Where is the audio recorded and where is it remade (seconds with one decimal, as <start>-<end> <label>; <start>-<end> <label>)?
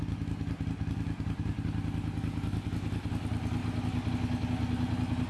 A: 0.0-5.3 recorded